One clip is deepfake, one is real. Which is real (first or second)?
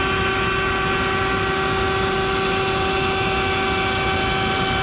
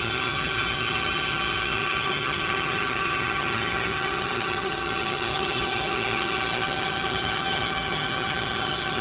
first